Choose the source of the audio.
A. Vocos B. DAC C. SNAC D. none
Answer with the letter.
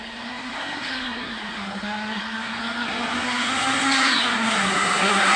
C